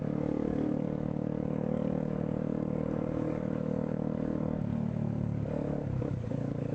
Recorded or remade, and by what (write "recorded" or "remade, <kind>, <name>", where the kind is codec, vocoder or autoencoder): remade, codec, DAC